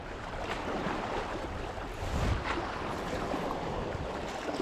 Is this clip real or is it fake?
real